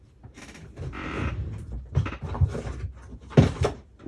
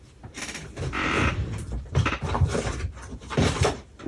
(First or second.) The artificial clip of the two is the second